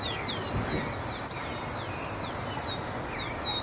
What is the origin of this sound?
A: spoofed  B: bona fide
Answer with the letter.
B